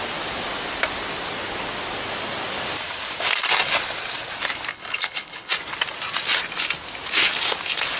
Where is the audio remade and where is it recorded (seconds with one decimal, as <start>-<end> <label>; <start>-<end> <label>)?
0.0-4.7 recorded; 4.7-5.5 remade; 5.5-8.0 recorded